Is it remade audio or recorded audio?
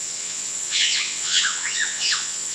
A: remade